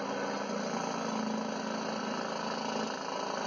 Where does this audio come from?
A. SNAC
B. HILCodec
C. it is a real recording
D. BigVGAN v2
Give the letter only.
C